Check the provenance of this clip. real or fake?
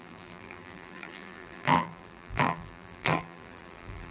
fake